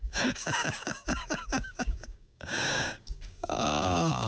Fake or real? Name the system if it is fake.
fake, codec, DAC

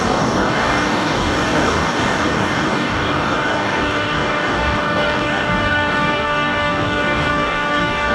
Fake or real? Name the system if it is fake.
fake, codec, DAC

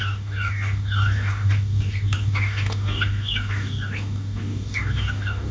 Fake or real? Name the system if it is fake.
fake, codec, DAC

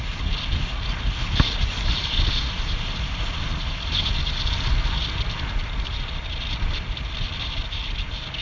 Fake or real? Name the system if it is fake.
real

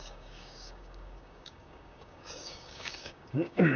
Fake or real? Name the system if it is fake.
fake, codec, DAC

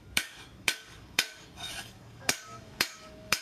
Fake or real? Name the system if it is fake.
fake, codec, DAC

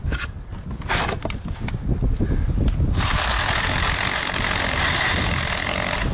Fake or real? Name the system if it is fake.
real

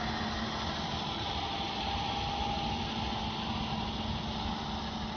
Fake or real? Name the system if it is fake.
real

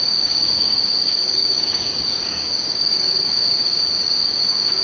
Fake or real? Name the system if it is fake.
fake, codec, DAC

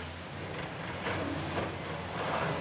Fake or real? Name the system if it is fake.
real